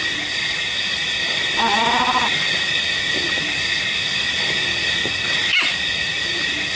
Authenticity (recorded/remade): recorded